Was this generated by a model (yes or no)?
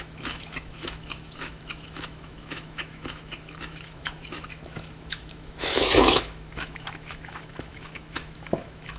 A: yes